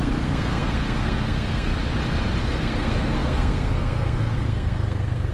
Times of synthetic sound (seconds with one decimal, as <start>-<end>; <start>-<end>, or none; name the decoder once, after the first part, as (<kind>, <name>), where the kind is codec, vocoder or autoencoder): 0.0-1.7 (codec, SNAC); 2.4-5.3